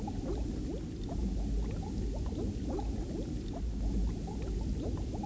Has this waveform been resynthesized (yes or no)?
no